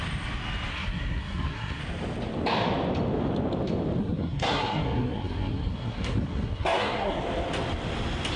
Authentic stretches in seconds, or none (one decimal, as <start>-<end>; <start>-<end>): 0.0-0.7; 1.8-4.0; 7.2-8.4